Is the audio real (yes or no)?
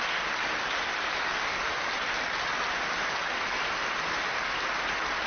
yes